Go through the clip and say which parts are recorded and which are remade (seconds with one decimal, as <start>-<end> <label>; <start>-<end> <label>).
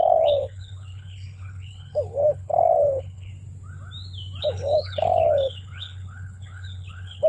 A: 0.0-3.3 remade; 3.3-4.4 recorded; 4.4-7.3 remade